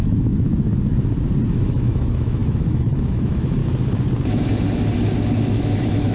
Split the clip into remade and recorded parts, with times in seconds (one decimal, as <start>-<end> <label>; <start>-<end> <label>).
0.0-0.5 remade; 0.5-1.5 recorded; 1.5-3.6 remade; 3.6-5.4 recorded; 5.4-6.1 remade